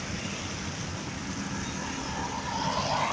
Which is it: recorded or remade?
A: recorded